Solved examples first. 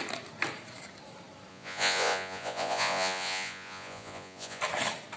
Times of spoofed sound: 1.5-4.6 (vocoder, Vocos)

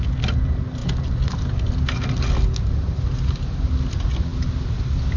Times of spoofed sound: none

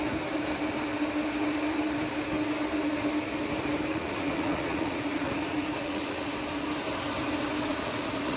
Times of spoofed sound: 3.9-6.3 (vocoder, Vocos); 7.7-8.4

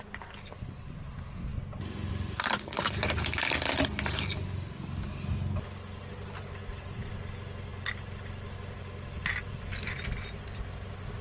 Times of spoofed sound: none

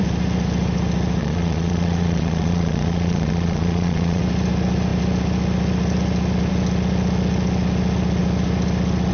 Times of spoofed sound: 1.2-4.2 (vocoder, Vocos)